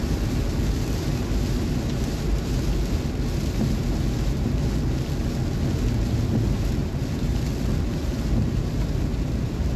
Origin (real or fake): real